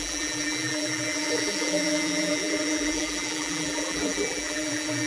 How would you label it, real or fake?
fake